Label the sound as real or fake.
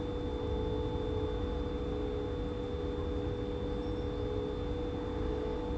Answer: real